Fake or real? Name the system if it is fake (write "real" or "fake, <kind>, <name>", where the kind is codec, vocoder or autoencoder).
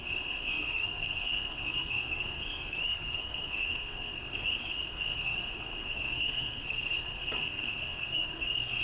fake, codec, SNAC